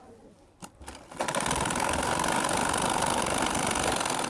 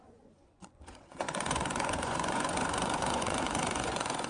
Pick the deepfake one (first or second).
second